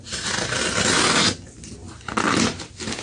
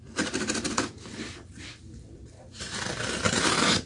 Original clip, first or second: first